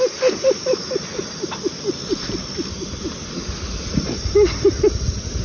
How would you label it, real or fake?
real